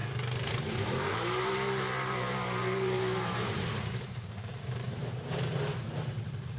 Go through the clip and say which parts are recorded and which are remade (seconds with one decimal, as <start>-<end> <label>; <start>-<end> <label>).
0.0-5.5 remade; 5.5-6.1 recorded; 6.1-6.6 remade